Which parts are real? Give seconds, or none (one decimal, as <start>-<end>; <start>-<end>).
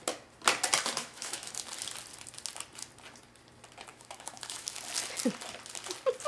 0.0-1.0; 1.5-3.9; 4.8-6.3